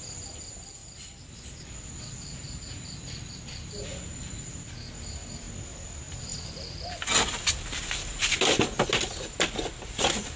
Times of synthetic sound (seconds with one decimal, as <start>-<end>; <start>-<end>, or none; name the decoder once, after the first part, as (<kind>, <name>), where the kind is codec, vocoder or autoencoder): none